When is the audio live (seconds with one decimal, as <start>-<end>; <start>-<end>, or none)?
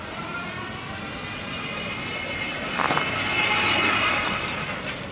0.0-5.1